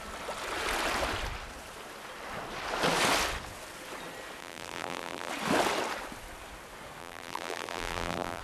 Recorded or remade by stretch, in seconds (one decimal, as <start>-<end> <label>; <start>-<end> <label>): 0.0-4.4 recorded; 4.4-5.3 remade; 5.3-7.0 recorded; 7.0-8.4 remade